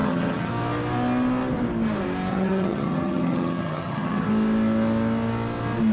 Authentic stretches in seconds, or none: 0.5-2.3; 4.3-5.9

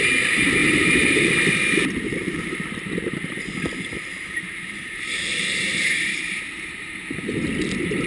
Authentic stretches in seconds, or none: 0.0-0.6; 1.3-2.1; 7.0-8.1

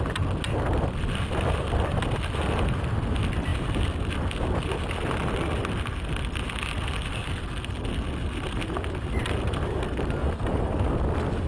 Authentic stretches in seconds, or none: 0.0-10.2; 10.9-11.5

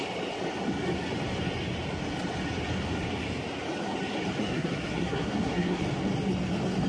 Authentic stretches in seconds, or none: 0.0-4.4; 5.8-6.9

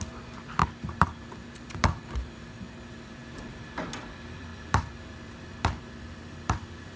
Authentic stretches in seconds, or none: 3.2-3.8